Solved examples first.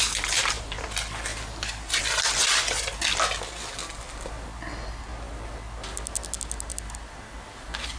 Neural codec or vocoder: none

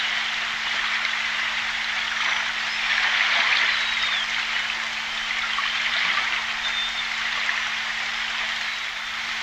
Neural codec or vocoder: none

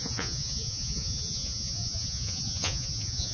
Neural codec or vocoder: vocoder, Vocos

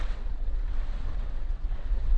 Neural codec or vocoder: vocoder, WaveNeXt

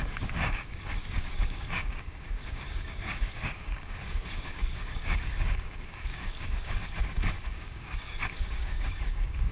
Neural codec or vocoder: codec, DAC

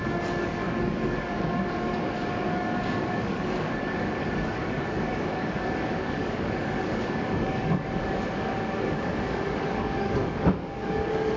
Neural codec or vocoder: codec, DAC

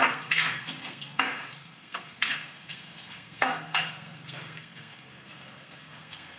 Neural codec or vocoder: codec, SNAC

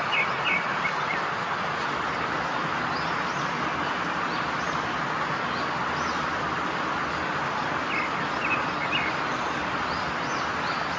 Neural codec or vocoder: none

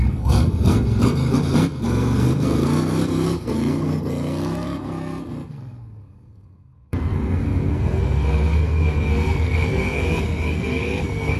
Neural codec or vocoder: codec, SNAC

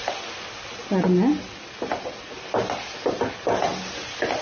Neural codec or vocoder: none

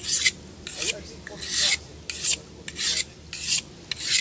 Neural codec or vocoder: none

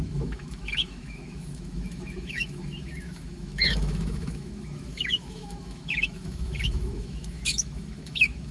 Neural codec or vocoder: autoencoder, DAC-VAE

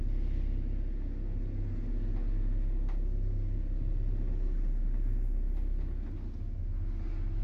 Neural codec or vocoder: none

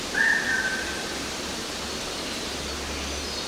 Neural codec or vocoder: none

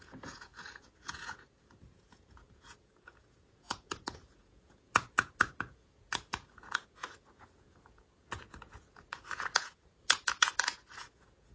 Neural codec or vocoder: vocoder, Vocos